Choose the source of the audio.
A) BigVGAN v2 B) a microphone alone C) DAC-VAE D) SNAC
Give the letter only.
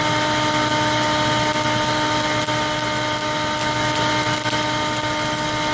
B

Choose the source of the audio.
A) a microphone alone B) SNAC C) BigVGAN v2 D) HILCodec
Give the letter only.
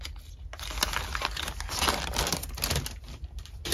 A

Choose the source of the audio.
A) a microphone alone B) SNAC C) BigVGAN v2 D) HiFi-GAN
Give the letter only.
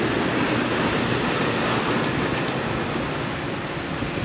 A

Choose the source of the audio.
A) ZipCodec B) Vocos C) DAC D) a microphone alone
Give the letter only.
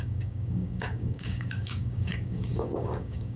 C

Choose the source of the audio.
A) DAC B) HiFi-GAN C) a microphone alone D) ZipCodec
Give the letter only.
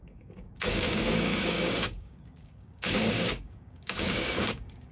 A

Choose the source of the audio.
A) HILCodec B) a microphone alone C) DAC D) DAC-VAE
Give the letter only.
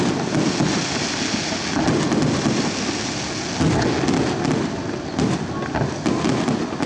B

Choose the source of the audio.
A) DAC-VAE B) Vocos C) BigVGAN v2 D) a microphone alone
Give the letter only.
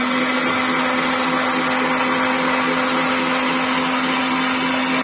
D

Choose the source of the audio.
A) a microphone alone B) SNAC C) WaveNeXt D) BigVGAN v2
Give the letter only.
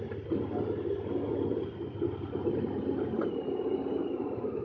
D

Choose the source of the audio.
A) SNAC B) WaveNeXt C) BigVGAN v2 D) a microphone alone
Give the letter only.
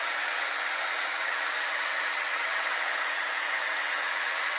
B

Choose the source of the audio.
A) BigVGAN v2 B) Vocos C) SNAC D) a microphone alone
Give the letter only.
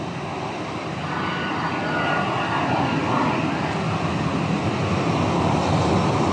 D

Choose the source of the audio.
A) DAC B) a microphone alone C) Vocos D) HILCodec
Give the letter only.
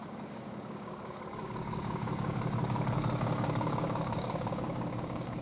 A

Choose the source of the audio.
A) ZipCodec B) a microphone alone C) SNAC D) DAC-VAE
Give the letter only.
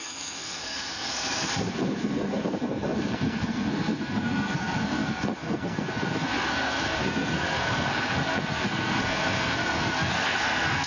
C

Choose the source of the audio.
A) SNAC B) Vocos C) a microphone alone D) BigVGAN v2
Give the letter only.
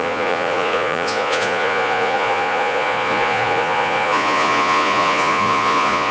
B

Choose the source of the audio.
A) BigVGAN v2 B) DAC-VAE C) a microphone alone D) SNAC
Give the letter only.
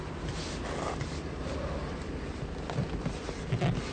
C